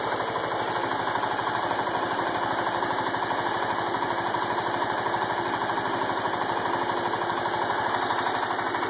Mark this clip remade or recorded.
recorded